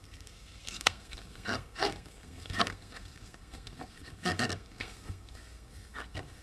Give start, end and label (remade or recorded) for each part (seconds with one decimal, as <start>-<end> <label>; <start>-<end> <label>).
0.0-6.4 remade

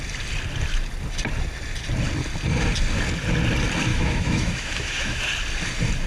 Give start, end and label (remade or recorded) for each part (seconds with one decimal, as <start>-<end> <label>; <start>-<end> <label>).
0.0-3.9 recorded; 3.9-5.2 remade; 5.2-6.1 recorded